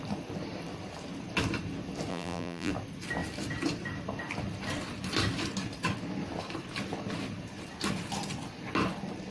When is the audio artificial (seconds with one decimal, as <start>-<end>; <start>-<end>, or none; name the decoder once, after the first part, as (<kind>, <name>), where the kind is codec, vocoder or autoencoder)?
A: 2.1-2.7 (vocoder, BigVGAN v2)